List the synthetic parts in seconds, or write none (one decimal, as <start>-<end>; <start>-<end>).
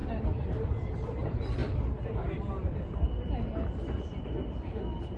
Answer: none